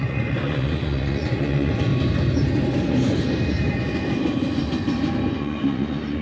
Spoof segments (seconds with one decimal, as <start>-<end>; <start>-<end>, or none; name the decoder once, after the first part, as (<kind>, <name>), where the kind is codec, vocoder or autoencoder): 0.0-1.9 (vocoder, Vocos); 5.3-6.2

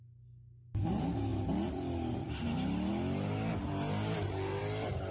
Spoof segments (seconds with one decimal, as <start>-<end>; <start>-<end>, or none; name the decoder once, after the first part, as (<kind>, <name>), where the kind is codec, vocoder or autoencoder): none

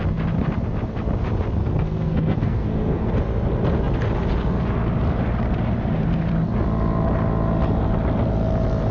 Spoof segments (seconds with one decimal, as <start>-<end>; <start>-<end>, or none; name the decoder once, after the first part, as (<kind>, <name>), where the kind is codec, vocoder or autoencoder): 1.6-3.1 (codec, SNAC)

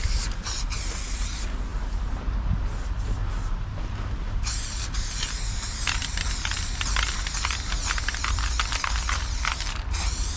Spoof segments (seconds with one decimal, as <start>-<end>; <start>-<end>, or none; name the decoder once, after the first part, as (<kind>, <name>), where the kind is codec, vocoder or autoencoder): none